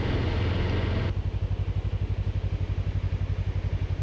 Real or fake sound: real